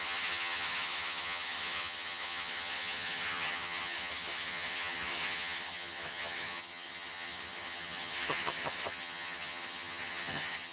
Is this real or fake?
fake